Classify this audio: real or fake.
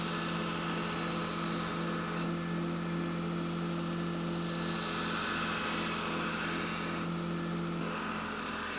real